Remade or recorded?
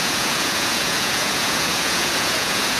remade